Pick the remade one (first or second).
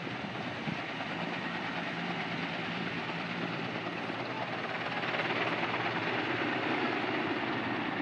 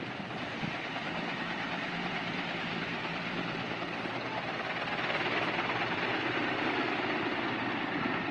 second